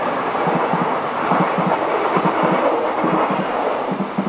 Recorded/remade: recorded